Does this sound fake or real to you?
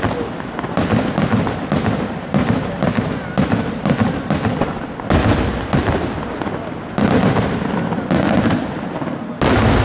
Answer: real